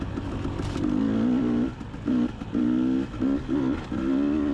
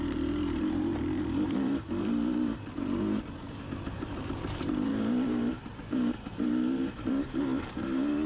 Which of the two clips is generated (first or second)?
second